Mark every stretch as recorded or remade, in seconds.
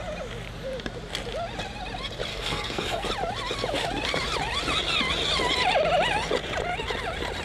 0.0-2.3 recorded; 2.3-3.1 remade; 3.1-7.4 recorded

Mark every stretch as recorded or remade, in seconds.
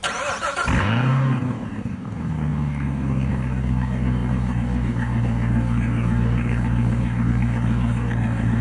0.0-0.8 recorded; 0.8-8.6 remade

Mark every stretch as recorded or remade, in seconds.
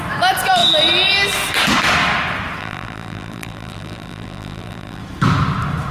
0.0-2.6 recorded; 2.6-5.0 remade; 5.0-5.9 recorded